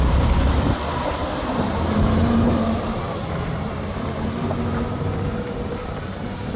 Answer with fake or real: fake